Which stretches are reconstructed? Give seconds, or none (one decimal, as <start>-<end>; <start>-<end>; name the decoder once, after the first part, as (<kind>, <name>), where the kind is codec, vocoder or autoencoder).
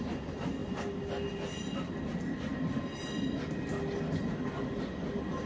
none